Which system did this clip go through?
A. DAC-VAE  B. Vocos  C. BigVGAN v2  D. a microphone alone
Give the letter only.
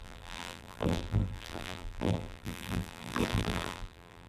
C